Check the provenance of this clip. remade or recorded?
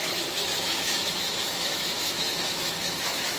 remade